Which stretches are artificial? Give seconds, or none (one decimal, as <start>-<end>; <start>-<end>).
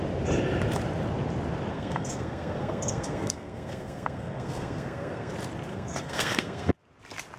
1.7-5.3; 5.7-6.7